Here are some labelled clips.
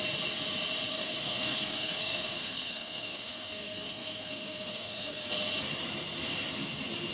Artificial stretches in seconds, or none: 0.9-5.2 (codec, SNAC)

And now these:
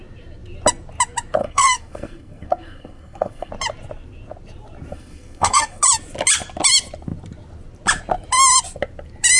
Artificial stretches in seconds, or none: 1.4-3.5 (codec, SNAC); 4.9-5.8

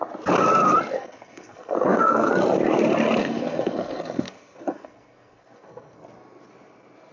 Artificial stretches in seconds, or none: 1.0-2.3 (codec, SNAC); 3.2-6.0

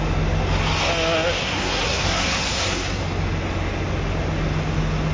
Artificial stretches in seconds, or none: 1.4-3.0 (codec, SNAC)

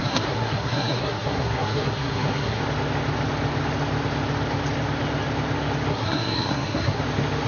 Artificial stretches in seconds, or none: 0.0-2.6 (codec, SNAC); 5.9-7.0

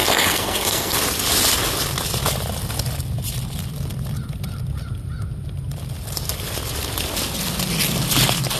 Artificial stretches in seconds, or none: 0.0-1.0 (codec, SNAC)